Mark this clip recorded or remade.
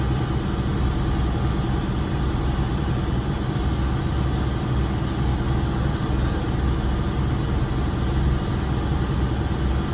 recorded